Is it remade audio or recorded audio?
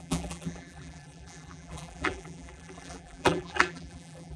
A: remade